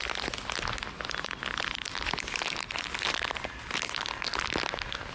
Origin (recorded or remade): recorded